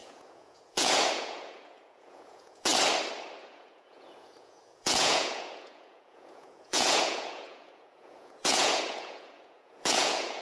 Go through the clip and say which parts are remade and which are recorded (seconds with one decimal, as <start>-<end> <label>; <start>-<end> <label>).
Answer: 0.0-2.7 remade; 2.7-3.4 recorded; 3.4-10.4 remade